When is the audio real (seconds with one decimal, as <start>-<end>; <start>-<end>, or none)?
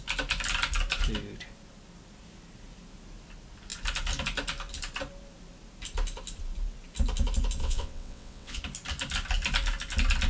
0.0-7.6; 8.6-10.3